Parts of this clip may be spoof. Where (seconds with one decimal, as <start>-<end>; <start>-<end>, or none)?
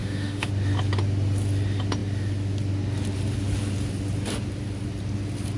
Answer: 0.0-0.5